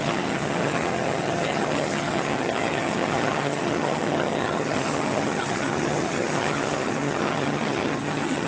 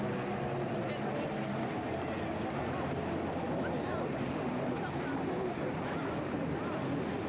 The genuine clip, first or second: second